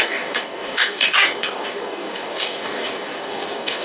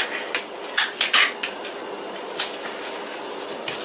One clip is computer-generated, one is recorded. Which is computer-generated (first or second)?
first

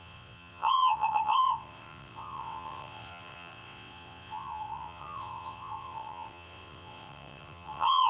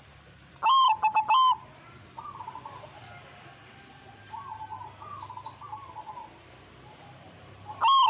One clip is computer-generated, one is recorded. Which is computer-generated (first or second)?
first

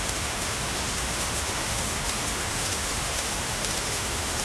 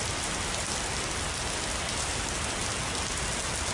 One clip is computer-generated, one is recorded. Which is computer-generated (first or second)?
first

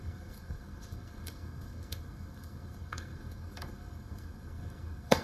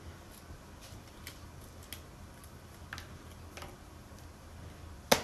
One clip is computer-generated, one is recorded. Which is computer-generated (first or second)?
first